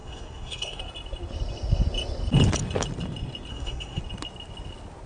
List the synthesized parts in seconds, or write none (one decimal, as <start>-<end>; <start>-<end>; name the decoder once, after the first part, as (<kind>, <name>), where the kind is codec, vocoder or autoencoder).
0.0-0.8 (codec, SNAC); 3.5-4.0